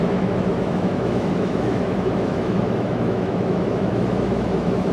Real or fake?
fake